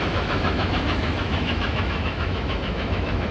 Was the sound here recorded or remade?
remade